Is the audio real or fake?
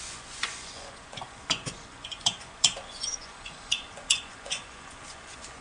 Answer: fake